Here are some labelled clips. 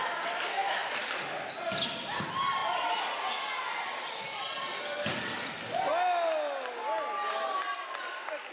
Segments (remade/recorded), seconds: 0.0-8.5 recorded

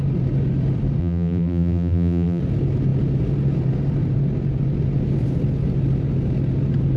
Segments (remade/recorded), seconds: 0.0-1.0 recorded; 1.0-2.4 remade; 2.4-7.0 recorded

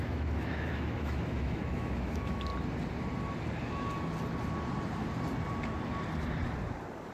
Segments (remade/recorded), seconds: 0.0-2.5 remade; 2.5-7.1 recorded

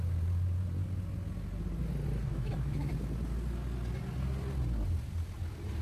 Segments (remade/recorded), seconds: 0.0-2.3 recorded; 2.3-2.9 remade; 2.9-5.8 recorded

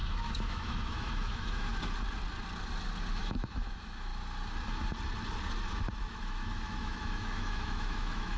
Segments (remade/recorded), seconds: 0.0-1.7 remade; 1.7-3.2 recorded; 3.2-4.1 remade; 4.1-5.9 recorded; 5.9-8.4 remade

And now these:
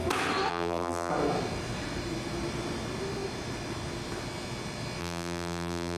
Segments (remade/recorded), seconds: 0.0-0.5 recorded; 0.5-1.1 remade; 1.1-5.0 recorded; 5.0-6.0 remade

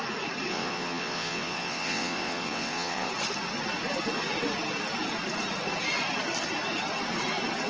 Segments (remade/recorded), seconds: 0.0-0.5 recorded; 0.5-3.1 remade; 3.1-7.7 recorded

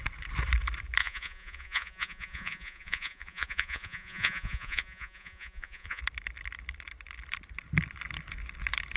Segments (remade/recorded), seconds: 0.0-1.0 recorded; 1.0-6.0 remade; 6.0-9.0 recorded